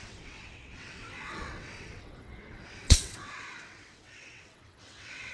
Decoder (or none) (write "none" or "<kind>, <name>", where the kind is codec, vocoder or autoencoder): vocoder, WaveNeXt